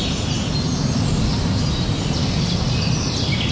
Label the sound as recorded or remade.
recorded